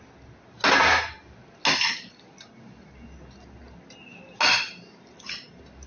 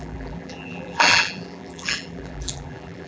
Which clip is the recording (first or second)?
first